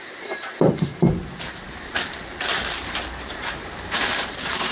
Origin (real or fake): fake